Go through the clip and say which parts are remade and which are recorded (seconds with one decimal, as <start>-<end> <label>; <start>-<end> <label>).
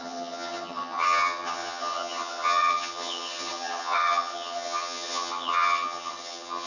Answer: 0.0-6.7 remade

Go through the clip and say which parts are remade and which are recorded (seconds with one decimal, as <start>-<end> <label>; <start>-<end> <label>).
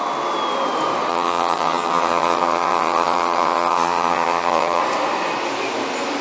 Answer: 0.0-1.1 recorded; 1.1-4.8 remade; 4.8-6.2 recorded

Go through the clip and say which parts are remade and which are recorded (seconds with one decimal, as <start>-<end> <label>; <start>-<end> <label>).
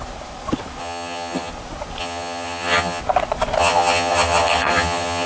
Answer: 0.0-0.8 recorded; 0.8-1.5 remade; 1.5-2.0 recorded; 2.0-3.0 remade; 3.0-3.6 recorded; 3.6-5.3 remade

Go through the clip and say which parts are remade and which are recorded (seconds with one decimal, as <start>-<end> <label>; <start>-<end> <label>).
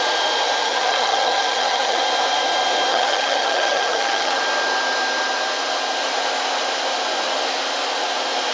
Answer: 0.0-0.6 recorded; 0.6-2.0 remade; 2.0-2.9 recorded; 2.9-4.4 remade; 4.4-8.5 recorded